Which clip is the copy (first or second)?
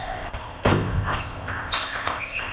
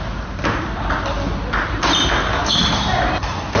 first